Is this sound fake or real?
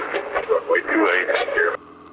real